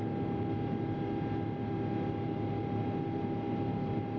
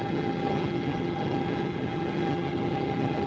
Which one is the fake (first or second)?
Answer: second